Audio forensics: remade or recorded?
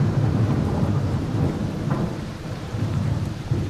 remade